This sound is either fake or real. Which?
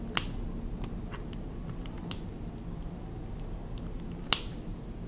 real